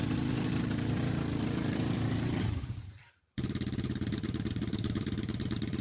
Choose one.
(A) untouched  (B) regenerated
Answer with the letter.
B